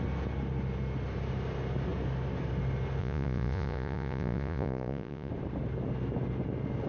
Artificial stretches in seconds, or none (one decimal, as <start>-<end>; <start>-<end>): 3.0-5.3